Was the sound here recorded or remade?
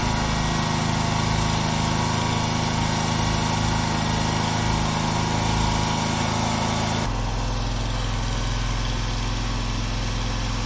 recorded